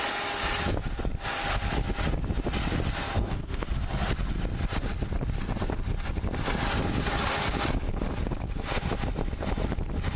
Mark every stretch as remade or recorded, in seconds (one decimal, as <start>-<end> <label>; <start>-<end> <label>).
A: 0.0-3.1 recorded; 3.1-3.6 remade; 3.6-10.2 recorded